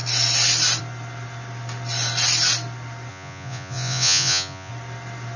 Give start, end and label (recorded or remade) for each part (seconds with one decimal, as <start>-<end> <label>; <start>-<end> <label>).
0.0-3.1 recorded; 3.1-4.7 remade; 4.7-5.4 recorded